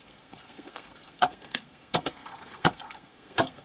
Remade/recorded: remade